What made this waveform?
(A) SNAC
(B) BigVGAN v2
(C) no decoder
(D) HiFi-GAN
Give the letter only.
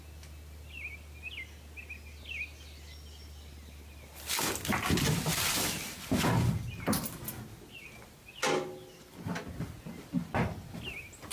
C